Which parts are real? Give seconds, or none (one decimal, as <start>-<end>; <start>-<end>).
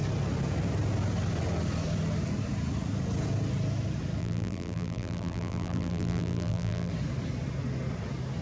0.0-4.2; 6.9-8.4